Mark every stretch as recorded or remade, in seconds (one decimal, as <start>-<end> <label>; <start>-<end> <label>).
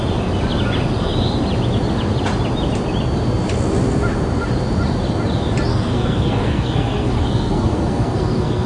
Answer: 0.0-5.7 recorded; 5.7-8.7 remade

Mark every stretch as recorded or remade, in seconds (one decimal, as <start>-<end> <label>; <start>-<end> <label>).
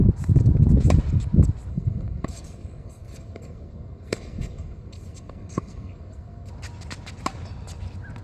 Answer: 0.0-1.7 recorded; 1.7-6.5 remade; 6.5-8.2 recorded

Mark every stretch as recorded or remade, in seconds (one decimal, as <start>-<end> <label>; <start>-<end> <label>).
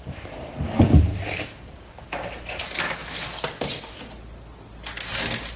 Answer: 0.0-5.6 recorded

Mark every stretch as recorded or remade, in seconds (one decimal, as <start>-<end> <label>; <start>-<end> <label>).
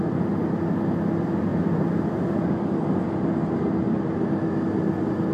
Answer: 0.0-5.3 recorded